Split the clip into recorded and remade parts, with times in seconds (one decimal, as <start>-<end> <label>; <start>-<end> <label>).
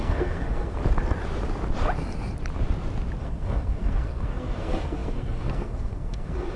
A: 0.0-0.8 remade; 0.8-3.2 recorded; 3.2-6.6 remade